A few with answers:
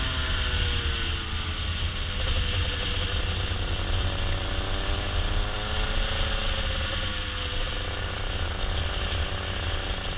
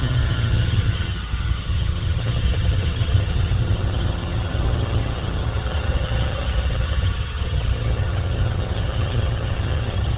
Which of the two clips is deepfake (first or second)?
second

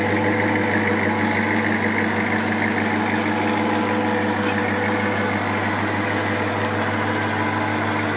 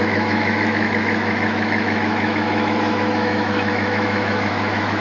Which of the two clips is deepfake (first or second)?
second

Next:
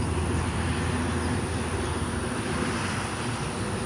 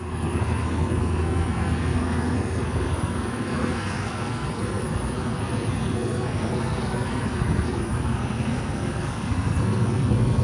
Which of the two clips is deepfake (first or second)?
second